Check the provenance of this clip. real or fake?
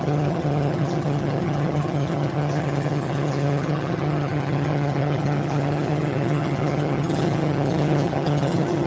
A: fake